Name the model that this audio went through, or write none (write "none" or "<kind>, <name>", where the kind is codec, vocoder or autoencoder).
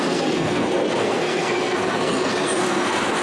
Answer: codec, SNAC